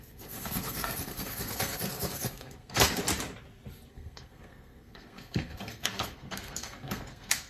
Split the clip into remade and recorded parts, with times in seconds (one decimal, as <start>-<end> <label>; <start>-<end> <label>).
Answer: 0.0-3.0 remade; 3.0-3.9 recorded; 3.9-7.5 remade